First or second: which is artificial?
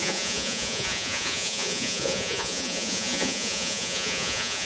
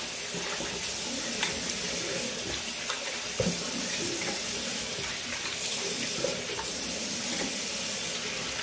first